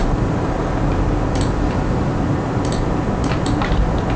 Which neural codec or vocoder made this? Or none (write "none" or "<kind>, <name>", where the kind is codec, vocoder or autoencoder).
none